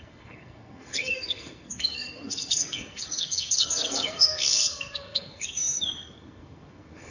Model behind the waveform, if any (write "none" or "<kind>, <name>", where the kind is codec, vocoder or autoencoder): codec, SNAC